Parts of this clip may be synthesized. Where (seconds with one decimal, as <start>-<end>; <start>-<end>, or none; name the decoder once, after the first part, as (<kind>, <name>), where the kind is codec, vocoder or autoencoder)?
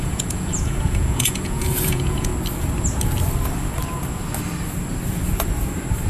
0.0-2.3 (vocoder, Vocos)